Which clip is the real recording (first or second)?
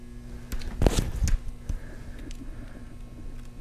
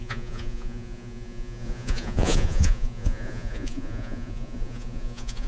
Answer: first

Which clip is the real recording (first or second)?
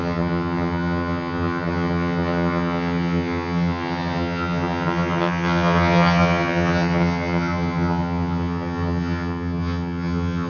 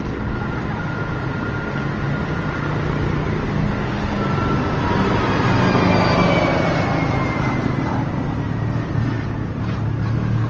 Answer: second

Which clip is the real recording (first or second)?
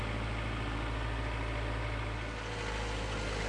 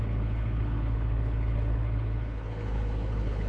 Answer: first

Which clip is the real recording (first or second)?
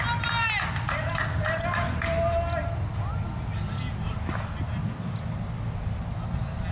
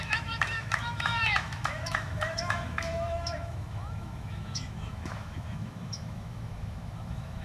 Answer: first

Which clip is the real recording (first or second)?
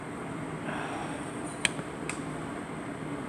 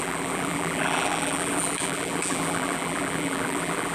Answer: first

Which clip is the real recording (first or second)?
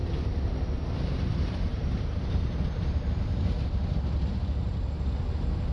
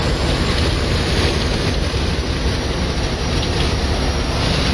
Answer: second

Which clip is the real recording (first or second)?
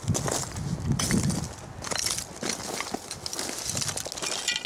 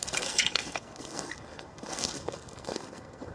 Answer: first